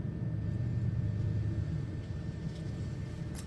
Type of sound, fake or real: real